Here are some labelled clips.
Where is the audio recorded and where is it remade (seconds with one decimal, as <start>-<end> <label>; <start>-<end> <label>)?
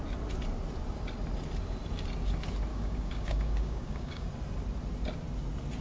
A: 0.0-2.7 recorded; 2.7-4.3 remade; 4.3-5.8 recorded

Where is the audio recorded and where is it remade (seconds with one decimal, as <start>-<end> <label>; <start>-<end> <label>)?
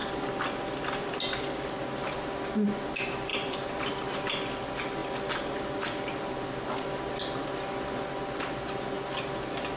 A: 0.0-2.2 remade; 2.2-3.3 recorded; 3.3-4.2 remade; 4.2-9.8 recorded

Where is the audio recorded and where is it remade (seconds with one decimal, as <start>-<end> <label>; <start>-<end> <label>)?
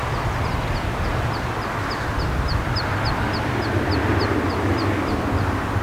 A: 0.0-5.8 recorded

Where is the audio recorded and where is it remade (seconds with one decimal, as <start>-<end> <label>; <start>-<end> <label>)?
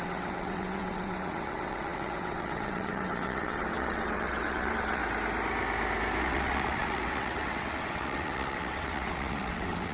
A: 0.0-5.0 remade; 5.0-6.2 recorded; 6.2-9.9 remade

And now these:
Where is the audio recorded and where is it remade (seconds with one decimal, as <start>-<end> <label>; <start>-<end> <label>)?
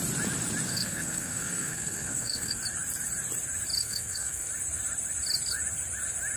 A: 0.0-0.7 recorded; 0.7-2.6 remade; 2.6-3.8 recorded; 3.8-4.5 remade; 4.5-6.4 recorded